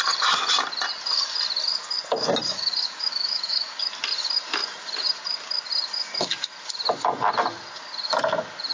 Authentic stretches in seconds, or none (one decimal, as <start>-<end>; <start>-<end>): 0.0-2.5; 3.8-8.7